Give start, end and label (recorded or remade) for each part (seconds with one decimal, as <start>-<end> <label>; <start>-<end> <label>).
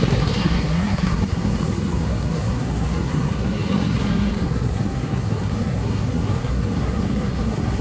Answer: 0.0-7.8 remade